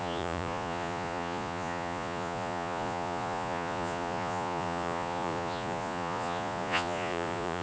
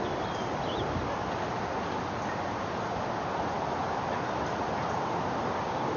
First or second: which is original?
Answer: second